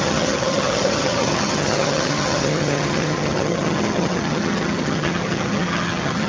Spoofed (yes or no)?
yes